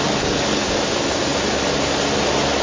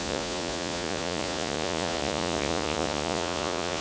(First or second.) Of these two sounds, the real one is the first